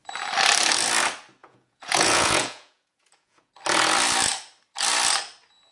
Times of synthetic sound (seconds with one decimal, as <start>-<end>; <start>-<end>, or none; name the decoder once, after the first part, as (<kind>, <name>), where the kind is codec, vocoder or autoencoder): 1.4-3.5 (vocoder, Vocos)